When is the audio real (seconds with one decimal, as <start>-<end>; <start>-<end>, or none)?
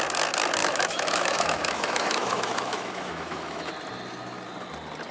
0.0-0.6; 3.7-5.1